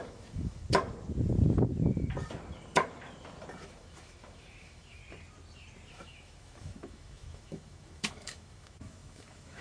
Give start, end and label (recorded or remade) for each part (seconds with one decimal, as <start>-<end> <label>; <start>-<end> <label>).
0.0-0.6 remade; 0.6-3.6 recorded; 3.6-5.0 remade; 5.0-5.9 recorded; 5.9-9.6 remade